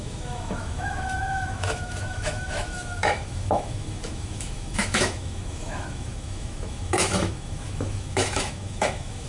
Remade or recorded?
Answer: remade